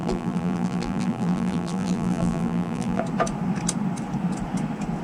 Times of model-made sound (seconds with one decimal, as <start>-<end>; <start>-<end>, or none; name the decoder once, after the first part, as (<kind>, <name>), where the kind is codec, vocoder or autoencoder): 0.0-3.0 (vocoder, BigVGAN v2)